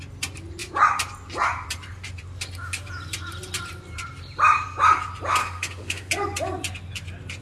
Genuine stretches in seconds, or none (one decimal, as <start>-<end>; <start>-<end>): 0.0-5.4; 6.1-7.4